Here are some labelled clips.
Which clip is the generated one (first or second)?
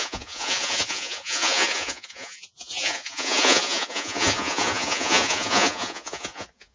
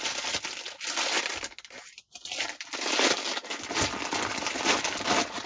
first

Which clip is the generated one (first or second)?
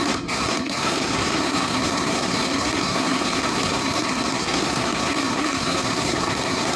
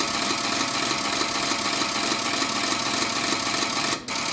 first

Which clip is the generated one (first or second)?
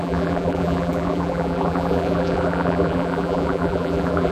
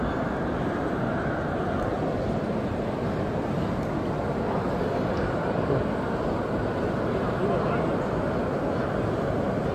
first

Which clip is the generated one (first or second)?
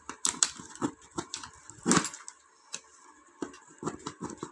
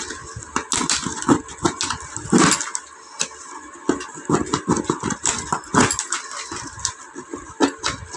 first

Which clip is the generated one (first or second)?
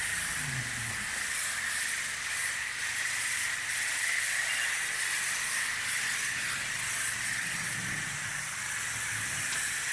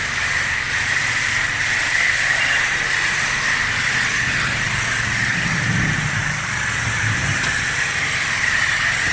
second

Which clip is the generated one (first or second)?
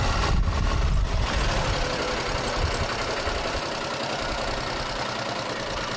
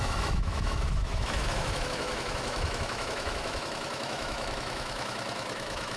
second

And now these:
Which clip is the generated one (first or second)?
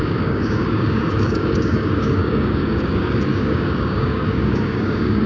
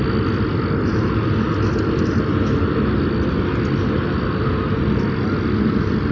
first